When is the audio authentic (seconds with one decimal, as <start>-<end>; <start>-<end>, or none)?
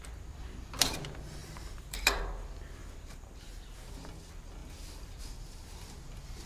0.0-1.4; 2.2-2.8; 3.3-6.5